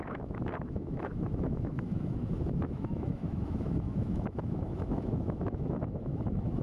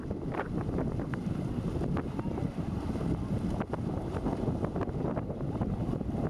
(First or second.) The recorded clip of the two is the second